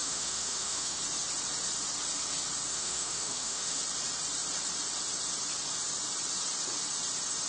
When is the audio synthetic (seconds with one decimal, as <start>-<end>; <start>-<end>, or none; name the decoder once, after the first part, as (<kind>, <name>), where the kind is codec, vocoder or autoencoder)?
0.0-1.0 (autoencoder, DAC-VAE); 2.7-3.8